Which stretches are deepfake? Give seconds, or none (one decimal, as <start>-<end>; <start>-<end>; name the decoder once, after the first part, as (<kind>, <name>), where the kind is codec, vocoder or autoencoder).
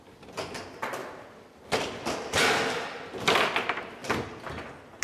none